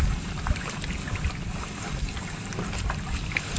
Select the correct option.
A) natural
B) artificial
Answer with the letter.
A